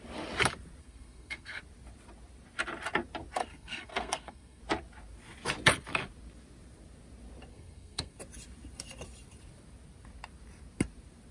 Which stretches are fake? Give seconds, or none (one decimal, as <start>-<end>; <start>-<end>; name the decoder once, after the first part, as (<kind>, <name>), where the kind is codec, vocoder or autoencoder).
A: 0.8-1.6 (codec, SNAC); 3.4-4.6; 7.5-8.2